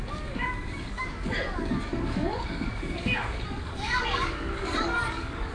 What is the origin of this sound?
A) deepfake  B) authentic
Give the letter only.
A